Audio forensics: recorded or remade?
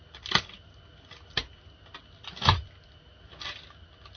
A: recorded